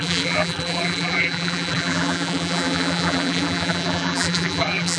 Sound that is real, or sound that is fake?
fake